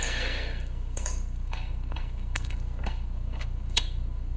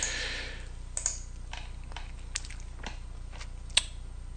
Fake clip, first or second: first